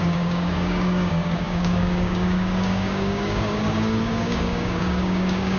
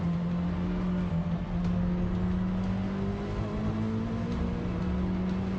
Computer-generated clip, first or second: first